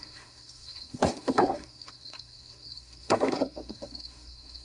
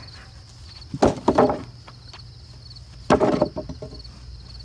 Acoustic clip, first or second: second